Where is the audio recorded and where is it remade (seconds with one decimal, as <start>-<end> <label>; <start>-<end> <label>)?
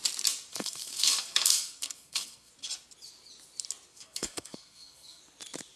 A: 0.0-0.5 recorded; 0.5-2.5 remade; 2.5-3.9 recorded; 3.9-5.2 remade; 5.2-5.8 recorded